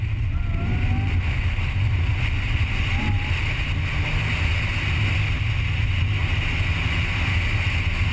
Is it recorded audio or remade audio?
recorded